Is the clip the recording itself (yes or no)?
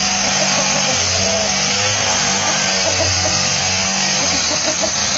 yes